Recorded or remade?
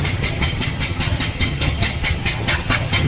remade